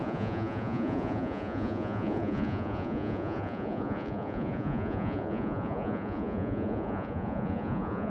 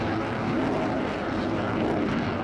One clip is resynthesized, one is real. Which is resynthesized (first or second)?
first